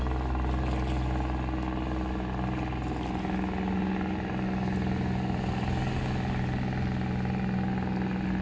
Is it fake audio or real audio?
real